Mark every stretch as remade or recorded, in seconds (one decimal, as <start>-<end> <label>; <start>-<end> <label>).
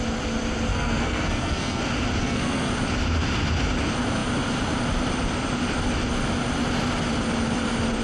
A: 0.0-0.7 recorded; 0.7-1.8 remade; 1.8-2.2 recorded; 2.2-2.7 remade; 2.7-8.0 recorded